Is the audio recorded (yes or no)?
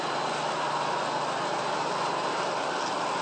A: yes